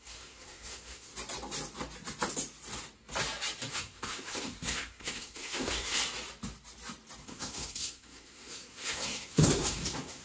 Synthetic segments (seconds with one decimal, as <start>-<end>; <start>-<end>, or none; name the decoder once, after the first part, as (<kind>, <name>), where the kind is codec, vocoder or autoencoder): 0.0-1.1 (codec, SNAC); 3.7-6.0; 7.2-10.2